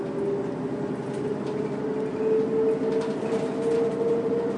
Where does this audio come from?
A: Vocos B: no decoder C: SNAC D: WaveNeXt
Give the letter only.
B